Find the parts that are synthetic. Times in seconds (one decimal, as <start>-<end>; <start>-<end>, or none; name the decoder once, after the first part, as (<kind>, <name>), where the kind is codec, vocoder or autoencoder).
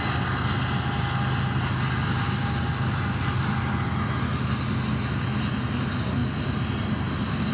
none